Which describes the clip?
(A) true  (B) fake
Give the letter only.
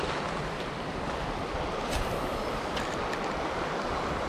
A